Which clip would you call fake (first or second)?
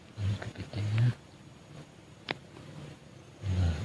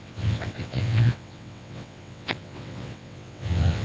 second